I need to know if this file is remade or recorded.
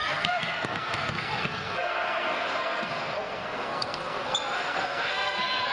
remade